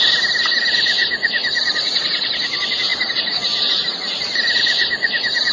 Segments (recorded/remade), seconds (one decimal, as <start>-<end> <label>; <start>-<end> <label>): 0.0-5.5 recorded